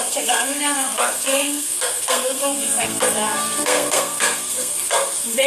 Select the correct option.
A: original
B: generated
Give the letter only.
B